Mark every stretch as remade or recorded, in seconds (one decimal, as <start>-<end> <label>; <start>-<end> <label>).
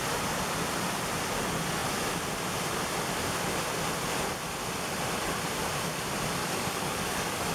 0.0-6.4 recorded; 6.4-7.5 remade